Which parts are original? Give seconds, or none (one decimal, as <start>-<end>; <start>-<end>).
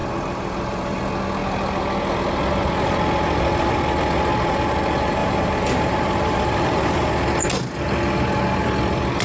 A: 1.0-5.2; 7.1-9.2